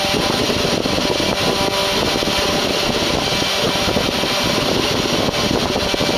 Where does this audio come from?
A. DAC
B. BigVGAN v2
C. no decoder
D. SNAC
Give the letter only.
C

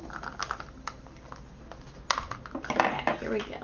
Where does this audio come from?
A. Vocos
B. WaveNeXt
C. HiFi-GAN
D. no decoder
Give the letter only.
D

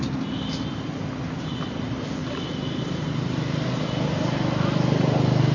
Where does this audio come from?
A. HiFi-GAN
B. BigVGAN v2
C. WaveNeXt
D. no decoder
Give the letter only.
D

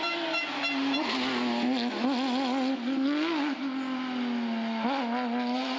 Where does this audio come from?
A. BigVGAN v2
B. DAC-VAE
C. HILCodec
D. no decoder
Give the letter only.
D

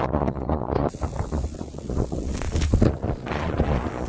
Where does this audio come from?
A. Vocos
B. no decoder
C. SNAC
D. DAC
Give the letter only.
A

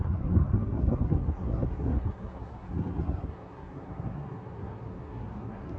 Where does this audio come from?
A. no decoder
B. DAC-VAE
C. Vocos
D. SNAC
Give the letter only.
D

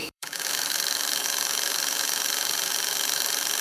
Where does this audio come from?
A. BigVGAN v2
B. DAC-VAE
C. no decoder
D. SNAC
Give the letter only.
B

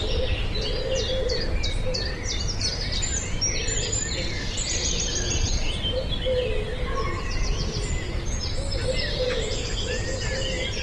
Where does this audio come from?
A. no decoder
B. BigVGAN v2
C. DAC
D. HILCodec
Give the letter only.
A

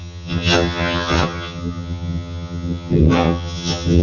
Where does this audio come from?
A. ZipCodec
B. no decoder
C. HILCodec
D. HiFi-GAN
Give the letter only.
D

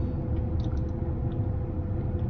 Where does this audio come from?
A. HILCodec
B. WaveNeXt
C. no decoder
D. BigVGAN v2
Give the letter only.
C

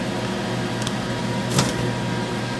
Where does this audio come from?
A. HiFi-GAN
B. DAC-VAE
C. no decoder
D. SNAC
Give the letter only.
C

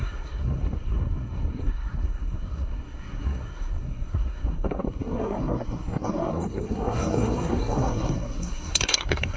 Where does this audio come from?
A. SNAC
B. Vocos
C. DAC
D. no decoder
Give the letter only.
A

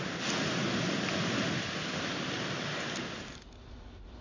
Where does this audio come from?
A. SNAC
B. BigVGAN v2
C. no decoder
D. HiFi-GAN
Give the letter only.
C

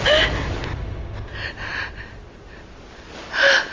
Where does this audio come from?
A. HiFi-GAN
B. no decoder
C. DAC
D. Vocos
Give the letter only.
B